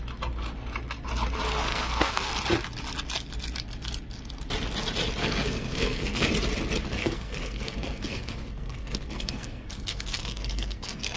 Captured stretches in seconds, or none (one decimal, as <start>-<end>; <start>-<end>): 0.0-1.7; 2.3-5.2; 6.3-7.0